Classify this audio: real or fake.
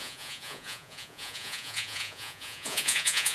fake